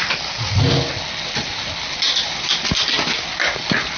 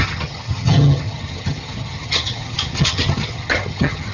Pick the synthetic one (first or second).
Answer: second